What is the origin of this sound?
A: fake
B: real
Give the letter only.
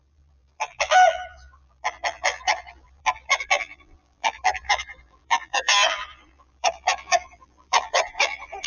A